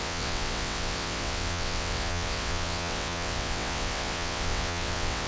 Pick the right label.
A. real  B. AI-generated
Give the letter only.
B